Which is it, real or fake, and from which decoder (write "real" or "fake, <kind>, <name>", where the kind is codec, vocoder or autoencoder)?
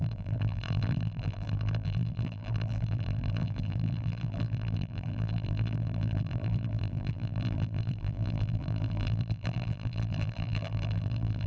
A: fake, vocoder, BigVGAN v2